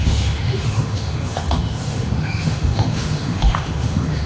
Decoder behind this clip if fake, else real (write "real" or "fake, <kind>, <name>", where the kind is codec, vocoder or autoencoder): fake, autoencoder, DAC-VAE